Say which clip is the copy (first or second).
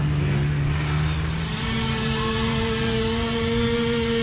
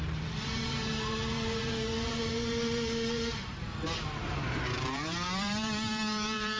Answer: second